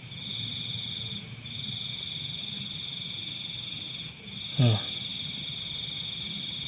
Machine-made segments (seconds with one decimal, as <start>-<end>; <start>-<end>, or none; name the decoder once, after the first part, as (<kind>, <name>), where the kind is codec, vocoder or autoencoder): none